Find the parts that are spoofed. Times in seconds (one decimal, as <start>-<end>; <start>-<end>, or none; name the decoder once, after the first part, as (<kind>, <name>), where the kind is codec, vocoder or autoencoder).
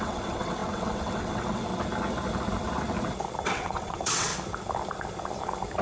0.0-1.7 (vocoder, WaveNeXt); 3.4-4.3